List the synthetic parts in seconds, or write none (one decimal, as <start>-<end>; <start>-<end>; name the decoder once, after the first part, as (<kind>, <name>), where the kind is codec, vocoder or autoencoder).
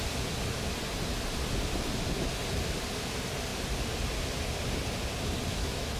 5.5-6.0 (autoencoder, DAC-VAE)